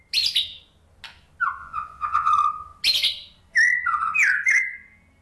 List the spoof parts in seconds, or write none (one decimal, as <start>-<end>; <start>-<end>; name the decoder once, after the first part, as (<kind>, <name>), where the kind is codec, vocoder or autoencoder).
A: 1.6-2.3 (vocoder, Vocos)